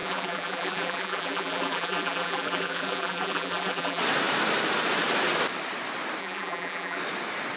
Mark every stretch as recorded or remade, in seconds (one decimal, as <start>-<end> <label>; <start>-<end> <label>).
0.0-4.0 remade; 4.0-6.2 recorded; 6.2-7.0 remade; 7.0-7.6 recorded

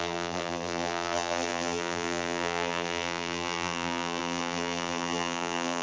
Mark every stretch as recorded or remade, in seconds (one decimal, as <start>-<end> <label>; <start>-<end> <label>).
0.0-5.8 remade

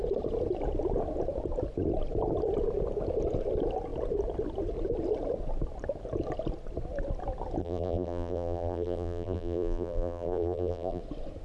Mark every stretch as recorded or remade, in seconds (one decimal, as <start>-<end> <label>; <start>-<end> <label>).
0.0-7.6 recorded; 7.6-11.0 remade; 11.0-11.4 recorded